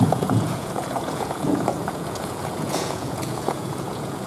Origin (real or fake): fake